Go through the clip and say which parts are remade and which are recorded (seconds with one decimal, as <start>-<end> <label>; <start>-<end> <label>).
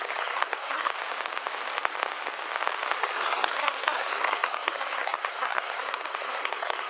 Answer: 0.0-0.9 remade; 0.9-3.0 recorded; 3.0-6.9 remade